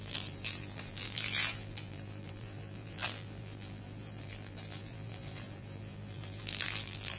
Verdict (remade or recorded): remade